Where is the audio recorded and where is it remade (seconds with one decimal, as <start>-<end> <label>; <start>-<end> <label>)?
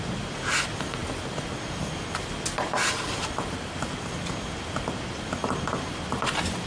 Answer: 0.0-6.7 recorded